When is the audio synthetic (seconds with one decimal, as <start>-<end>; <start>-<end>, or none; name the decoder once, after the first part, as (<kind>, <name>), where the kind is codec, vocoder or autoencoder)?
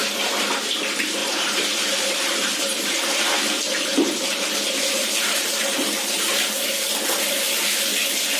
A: 1.2-6.2 (vocoder, BigVGAN v2)